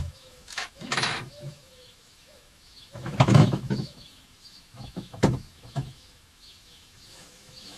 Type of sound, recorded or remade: remade